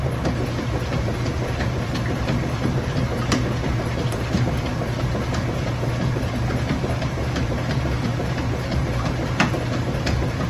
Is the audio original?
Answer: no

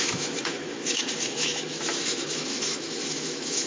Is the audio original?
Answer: no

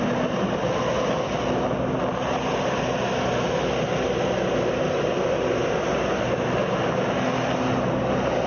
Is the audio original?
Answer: yes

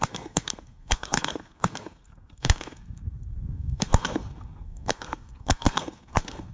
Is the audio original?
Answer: no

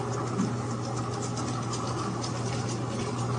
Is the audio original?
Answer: yes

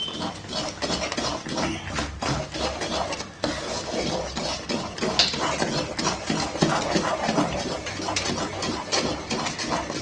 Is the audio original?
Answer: yes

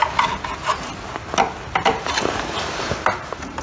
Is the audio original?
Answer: yes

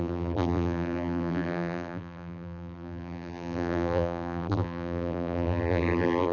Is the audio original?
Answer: no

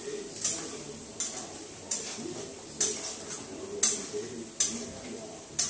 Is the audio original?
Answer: yes